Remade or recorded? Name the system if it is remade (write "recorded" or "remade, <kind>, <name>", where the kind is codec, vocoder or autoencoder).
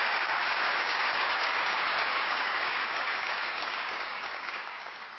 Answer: remade, codec, DAC